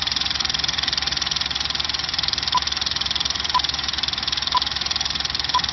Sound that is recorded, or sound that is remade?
recorded